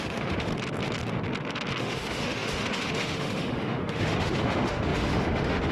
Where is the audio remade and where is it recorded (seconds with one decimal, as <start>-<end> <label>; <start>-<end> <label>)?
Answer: 0.0-0.5 remade; 0.5-1.8 recorded; 1.8-5.7 remade